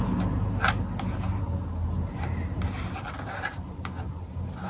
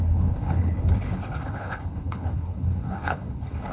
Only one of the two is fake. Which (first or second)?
second